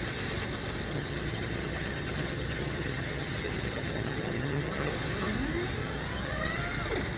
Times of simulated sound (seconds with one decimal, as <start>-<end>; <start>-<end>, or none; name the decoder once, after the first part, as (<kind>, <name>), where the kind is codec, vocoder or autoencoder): 0.9-4.9 (vocoder, HiFi-GAN); 5.8-6.6